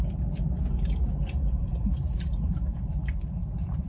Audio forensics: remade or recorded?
remade